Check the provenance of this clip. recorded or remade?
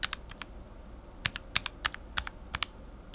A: recorded